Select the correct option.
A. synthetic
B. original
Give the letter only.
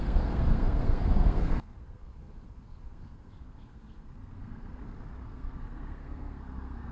A